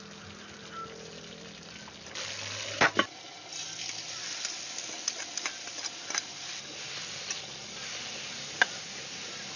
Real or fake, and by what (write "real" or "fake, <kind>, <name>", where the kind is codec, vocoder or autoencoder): real